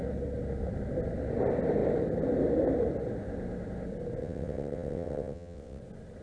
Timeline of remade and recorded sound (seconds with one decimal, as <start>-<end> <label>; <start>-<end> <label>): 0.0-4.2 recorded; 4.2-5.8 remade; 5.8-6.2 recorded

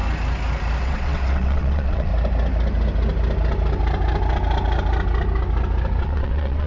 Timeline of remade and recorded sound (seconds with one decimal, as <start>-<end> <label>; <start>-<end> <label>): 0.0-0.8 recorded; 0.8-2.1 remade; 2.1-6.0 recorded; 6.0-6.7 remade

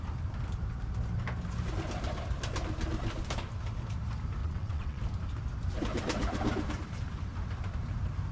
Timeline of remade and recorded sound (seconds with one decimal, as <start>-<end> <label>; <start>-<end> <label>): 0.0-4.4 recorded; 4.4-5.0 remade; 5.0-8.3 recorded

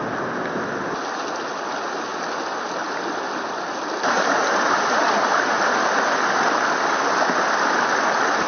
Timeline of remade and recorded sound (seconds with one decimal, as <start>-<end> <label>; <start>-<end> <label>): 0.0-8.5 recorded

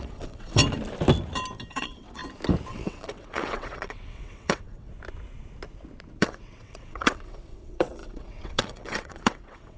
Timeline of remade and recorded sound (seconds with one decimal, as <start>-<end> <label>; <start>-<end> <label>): 0.0-0.6 remade; 0.6-1.7 recorded; 1.7-2.2 remade; 2.2-2.7 recorded; 2.7-4.9 remade; 4.9-6.2 recorded; 6.2-9.8 remade

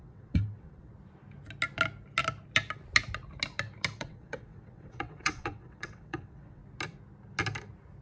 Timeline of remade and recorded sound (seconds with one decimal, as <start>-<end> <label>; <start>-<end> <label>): 0.0-0.9 remade; 0.9-4.0 recorded; 4.0-6.6 remade; 6.6-8.0 recorded

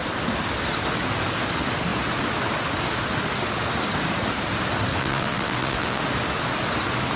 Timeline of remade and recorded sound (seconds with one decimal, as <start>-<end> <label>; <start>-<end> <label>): 0.0-4.9 recorded; 4.9-6.0 remade; 6.0-7.2 recorded

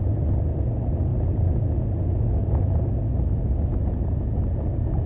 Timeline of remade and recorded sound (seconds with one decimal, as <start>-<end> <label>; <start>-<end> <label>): 0.0-5.1 recorded